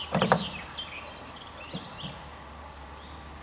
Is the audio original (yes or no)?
yes